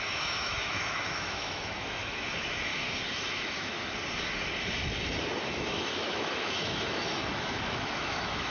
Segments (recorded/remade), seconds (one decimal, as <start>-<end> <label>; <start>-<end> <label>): 0.0-2.7 remade; 2.7-3.3 recorded; 3.3-3.8 remade; 3.8-5.5 recorded; 5.5-8.5 remade